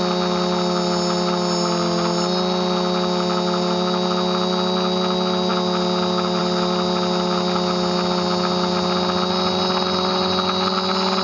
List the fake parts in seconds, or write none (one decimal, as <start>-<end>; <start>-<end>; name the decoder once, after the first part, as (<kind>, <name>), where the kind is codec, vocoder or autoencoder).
none